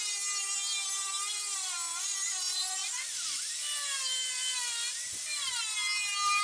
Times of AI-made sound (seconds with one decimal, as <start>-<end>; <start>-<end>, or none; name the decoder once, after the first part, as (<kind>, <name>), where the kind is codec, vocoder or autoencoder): 2.8-5.6 (vocoder, BigVGAN v2)